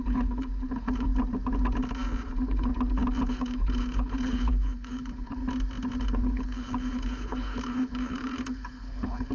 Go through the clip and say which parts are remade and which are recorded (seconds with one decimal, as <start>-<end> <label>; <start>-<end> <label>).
0.0-1.1 remade; 1.1-2.3 recorded; 2.3-2.7 remade; 2.7-3.3 recorded; 3.3-5.4 remade; 5.4-6.0 recorded; 6.0-9.3 remade